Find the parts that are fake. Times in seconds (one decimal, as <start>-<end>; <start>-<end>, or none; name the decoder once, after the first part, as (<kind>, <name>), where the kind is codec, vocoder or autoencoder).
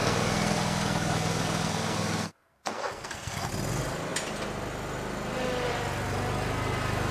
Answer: 0.0-3.5 (codec, SNAC)